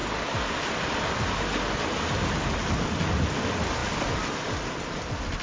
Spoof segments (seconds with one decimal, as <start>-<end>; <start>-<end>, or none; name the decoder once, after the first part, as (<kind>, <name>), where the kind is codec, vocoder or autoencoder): none